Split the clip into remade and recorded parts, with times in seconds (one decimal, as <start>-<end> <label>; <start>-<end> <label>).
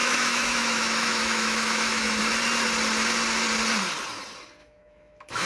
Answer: 0.0-2.2 remade; 2.2-4.6 recorded; 4.6-5.5 remade